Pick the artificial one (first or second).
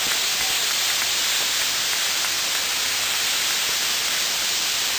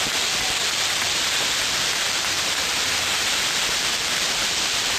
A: second